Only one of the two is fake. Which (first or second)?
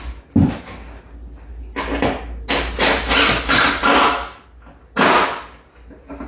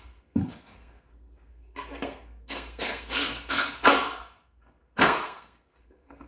second